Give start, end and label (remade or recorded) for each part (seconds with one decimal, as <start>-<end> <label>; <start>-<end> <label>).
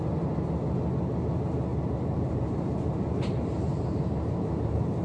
0.0-1.7 recorded; 1.7-5.0 remade